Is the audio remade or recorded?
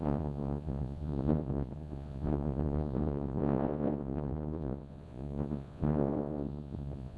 remade